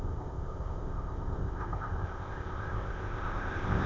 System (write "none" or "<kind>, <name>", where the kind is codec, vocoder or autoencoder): codec, ZipCodec